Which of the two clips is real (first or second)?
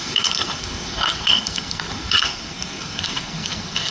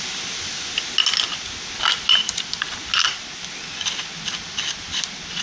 second